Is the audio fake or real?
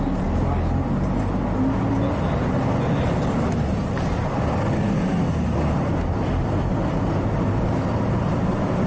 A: real